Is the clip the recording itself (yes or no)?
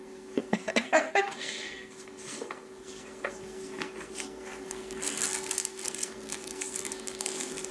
no